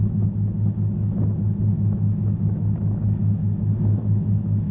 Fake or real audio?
fake